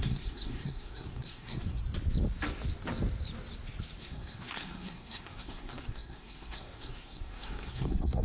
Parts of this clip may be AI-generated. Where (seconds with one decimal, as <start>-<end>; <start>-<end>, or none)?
0.0-1.8; 4.0-8.2